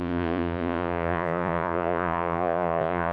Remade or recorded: remade